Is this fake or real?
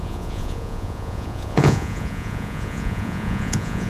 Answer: fake